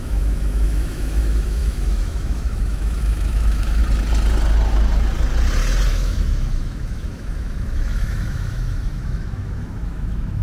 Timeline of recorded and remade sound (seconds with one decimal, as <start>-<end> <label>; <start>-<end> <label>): 0.0-3.8 remade; 3.8-5.9 recorded; 5.9-10.4 remade